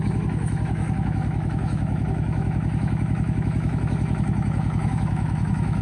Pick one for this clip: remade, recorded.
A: remade